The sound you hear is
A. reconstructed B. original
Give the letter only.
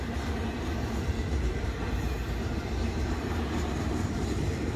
A